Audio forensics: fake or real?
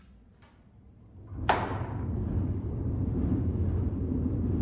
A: real